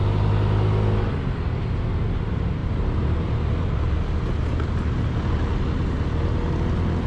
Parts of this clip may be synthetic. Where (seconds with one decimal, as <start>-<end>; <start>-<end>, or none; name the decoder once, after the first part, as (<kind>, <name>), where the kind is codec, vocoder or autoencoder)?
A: 2.6-4.1 (vocoder, BigVGAN v2)